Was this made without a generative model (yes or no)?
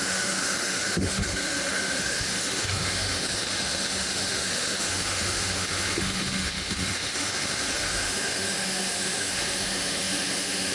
no